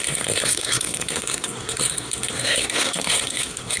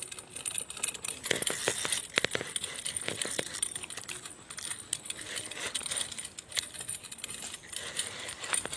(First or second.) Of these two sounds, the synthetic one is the first